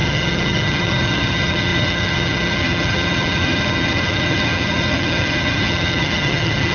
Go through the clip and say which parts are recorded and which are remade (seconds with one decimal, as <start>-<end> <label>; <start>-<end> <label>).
0.0-6.7 remade